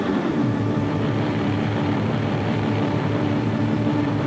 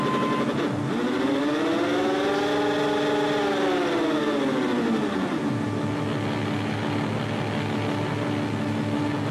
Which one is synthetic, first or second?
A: first